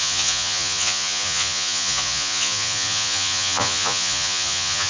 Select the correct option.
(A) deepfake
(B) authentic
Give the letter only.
A